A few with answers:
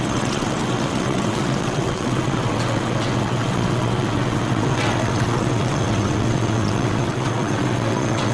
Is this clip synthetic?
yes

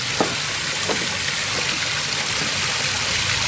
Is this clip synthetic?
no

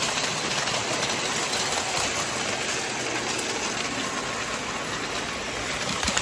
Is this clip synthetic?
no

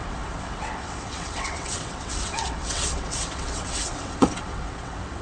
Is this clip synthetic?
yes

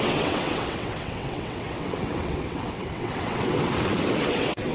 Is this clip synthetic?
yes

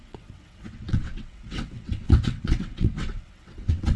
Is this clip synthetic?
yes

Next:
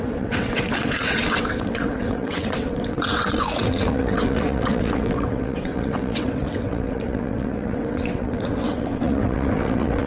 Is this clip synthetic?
yes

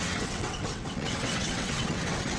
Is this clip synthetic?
yes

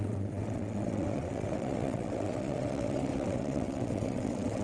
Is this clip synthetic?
yes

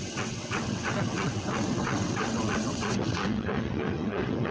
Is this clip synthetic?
yes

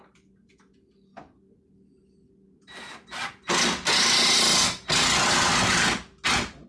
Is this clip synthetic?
no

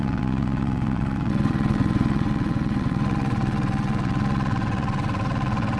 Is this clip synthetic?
yes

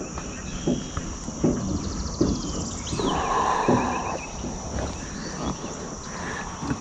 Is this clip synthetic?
no